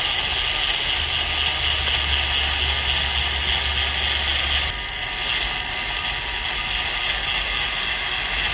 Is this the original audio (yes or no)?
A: yes